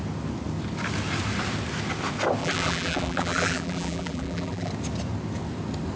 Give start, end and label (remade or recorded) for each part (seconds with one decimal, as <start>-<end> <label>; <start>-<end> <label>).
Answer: 0.0-2.4 recorded; 2.4-4.7 remade; 4.7-6.0 recorded